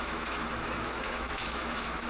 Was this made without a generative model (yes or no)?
no